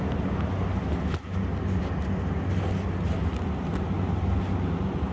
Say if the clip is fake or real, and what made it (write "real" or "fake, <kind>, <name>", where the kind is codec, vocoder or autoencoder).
real